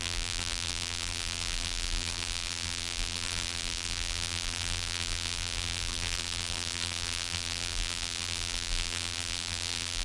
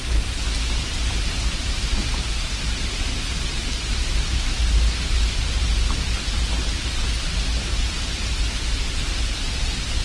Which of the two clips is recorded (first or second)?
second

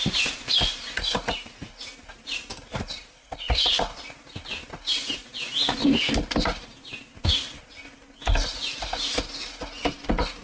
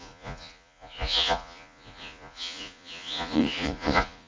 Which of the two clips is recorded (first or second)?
first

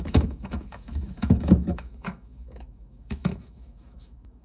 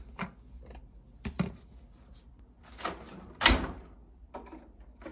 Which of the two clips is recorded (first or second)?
second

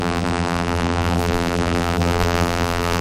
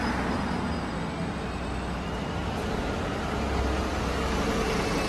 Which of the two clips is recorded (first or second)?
second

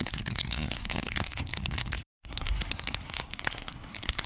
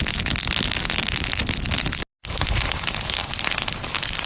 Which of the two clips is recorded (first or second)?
second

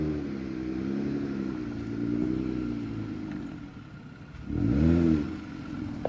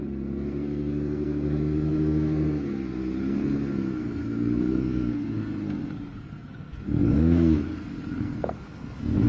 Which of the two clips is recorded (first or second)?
first